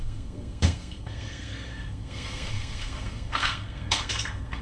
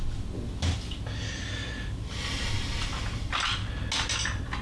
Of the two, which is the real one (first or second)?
second